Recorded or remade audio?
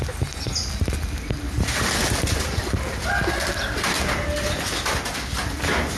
recorded